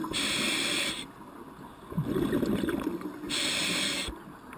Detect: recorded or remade recorded